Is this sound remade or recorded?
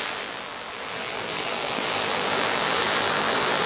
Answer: remade